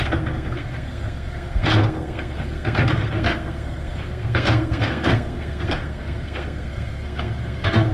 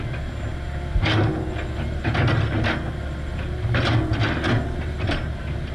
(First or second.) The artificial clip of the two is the first